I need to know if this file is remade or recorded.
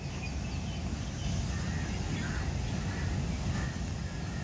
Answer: recorded